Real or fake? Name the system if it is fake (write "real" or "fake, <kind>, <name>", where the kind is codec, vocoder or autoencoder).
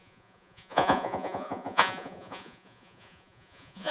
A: fake, vocoder, Vocos